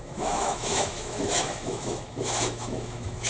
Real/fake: fake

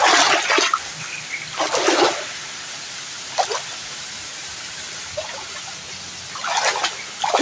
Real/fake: real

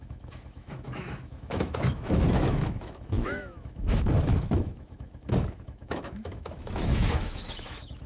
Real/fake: fake